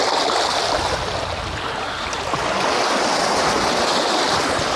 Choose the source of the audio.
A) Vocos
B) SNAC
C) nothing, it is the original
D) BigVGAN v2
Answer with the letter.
C